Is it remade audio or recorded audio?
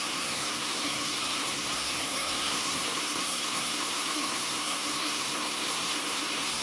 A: remade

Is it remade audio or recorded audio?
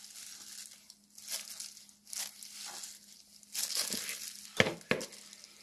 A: recorded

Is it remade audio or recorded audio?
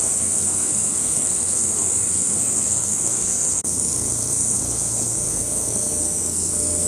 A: remade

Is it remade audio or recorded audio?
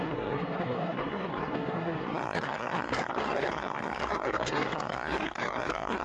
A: remade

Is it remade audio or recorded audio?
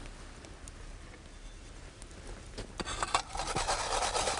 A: recorded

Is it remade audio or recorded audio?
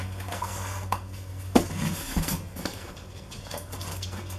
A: remade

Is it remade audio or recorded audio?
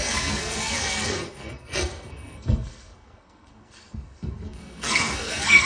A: remade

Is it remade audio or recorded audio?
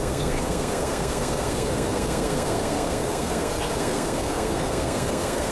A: remade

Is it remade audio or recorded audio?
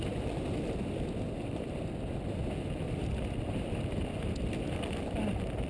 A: recorded